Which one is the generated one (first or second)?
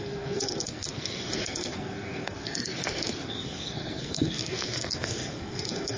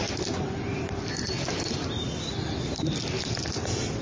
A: first